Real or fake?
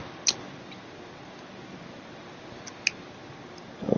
real